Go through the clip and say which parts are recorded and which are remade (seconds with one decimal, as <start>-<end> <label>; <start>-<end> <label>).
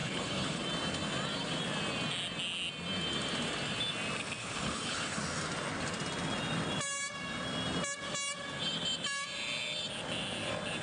0.0-0.6 remade; 0.6-4.4 recorded; 4.4-5.2 remade; 5.2-10.8 recorded